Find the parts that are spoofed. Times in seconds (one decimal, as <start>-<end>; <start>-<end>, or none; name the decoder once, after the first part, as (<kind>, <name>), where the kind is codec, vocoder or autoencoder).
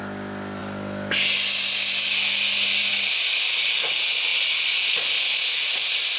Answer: none